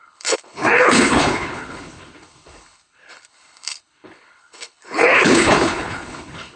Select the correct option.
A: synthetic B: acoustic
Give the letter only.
A